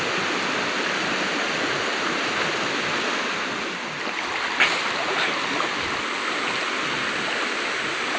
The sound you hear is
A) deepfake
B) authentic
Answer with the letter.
B